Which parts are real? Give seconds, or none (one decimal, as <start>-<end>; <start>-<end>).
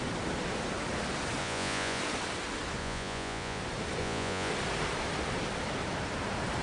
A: 0.0-1.4; 2.0-2.8; 3.6-4.0; 4.5-6.6